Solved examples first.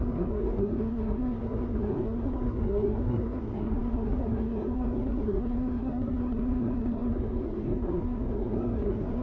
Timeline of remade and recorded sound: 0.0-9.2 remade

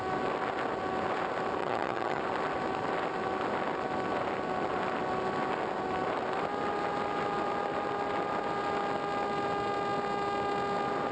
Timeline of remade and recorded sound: 0.0-1.6 recorded; 1.6-2.2 remade; 2.2-11.1 recorded

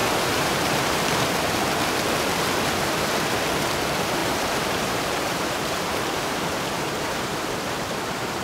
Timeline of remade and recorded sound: 0.0-1.2 remade; 1.2-4.2 recorded; 4.2-8.4 remade

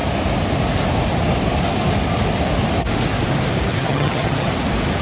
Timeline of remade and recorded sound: 0.0-3.7 recorded; 3.7-4.5 remade; 4.5-5.0 recorded

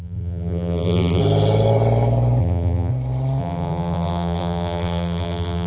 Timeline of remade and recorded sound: 0.0-1.2 remade; 1.2-2.4 recorded; 2.4-2.9 remade; 2.9-3.4 recorded; 3.4-5.7 remade